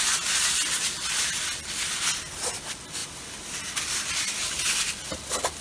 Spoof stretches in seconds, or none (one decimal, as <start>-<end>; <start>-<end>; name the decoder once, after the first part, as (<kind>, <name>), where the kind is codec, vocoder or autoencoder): none